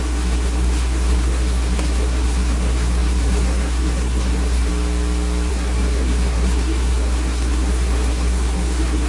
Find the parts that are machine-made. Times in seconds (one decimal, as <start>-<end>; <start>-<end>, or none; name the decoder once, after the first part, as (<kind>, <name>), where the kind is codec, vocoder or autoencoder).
0.0-4.7 (codec, SNAC); 5.5-9.1